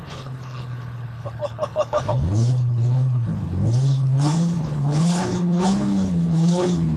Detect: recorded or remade remade